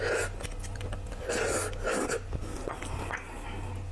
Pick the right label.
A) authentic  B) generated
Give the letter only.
A